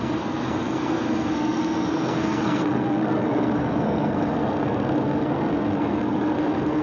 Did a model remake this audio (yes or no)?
yes